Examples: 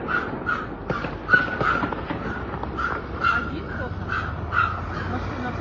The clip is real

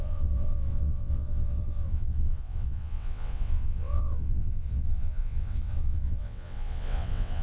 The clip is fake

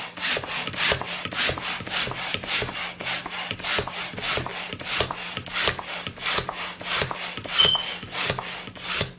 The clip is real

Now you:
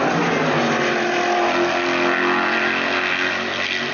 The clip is real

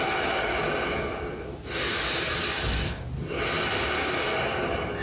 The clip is real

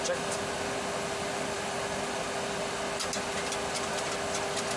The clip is real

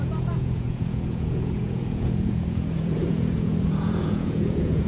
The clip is fake